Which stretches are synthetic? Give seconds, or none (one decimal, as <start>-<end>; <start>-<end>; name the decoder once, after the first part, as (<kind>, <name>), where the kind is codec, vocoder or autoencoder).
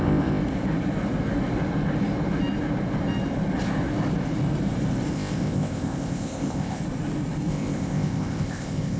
0.0-0.4 (codec, ZipCodec); 5.1-6.8; 7.5-9.0